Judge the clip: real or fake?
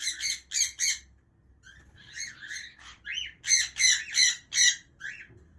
real